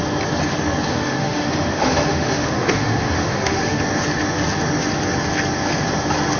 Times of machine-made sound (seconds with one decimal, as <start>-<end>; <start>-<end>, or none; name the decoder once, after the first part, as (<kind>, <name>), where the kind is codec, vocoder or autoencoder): 0.9-3.8 (autoencoder, DAC-VAE)